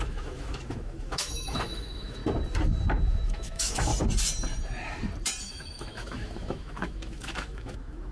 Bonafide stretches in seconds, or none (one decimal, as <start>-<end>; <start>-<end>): 2.2-3.3; 3.9-5.4